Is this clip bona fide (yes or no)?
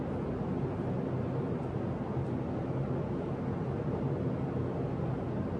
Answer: yes